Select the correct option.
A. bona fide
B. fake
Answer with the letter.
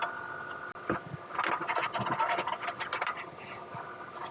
A